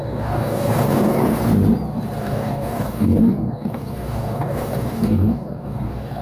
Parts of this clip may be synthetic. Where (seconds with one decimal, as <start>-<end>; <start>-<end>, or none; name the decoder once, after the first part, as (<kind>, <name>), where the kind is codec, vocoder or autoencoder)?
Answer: 0.0-1.4 (codec, DAC); 2.2-6.2